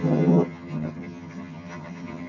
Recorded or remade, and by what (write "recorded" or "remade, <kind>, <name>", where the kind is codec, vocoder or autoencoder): remade, vocoder, HiFi-GAN